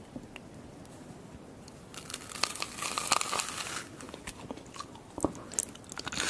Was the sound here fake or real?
real